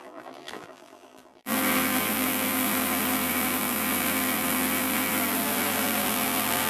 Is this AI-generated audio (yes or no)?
yes